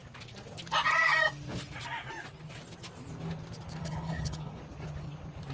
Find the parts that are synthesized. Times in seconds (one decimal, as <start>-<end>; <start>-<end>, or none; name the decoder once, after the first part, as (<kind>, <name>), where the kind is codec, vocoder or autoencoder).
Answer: 3.8-4.6 (codec, HILCodec)